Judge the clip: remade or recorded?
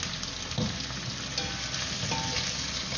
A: recorded